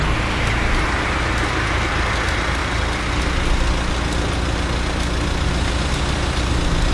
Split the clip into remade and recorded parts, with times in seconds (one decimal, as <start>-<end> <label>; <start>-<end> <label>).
0.0-6.9 recorded